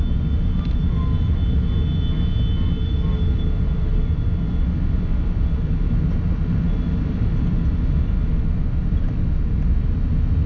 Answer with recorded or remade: recorded